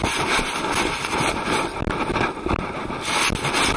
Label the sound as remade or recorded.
recorded